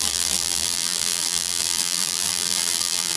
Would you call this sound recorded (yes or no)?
no